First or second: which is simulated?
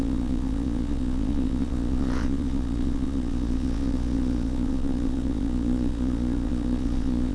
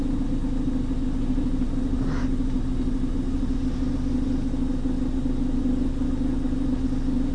first